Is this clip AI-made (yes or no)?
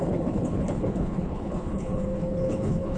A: yes